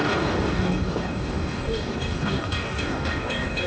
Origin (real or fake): fake